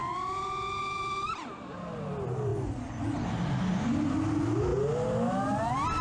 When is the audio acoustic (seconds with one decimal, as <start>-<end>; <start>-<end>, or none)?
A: 0.0-6.0